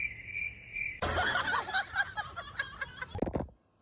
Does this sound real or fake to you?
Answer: real